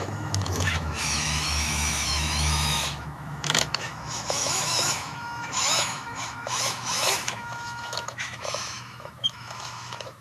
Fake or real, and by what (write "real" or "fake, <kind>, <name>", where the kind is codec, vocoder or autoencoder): fake, autoencoder, DAC-VAE